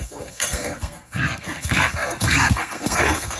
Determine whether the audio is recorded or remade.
remade